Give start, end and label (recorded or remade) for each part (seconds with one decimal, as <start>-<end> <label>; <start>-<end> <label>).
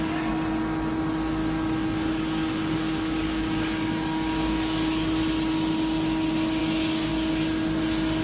0.0-1.4 recorded; 1.4-5.2 remade; 5.2-6.6 recorded; 6.6-7.1 remade; 7.1-8.2 recorded